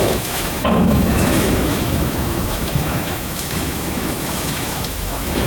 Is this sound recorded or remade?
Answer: remade